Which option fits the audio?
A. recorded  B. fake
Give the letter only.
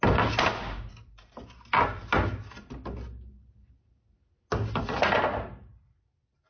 A